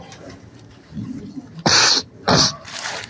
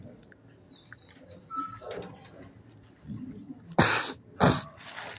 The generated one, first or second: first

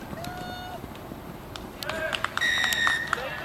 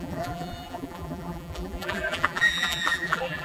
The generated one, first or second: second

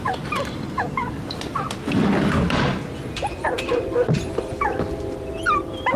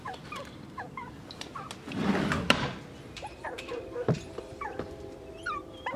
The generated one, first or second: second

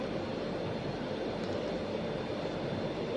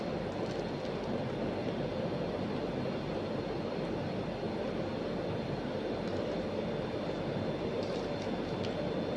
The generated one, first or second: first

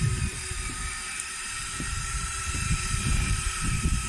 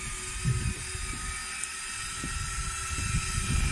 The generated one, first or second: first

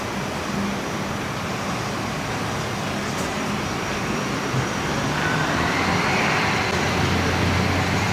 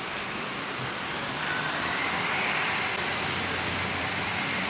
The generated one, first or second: second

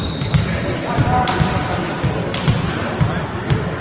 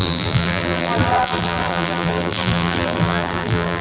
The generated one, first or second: second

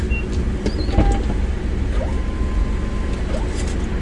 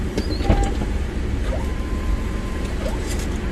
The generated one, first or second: second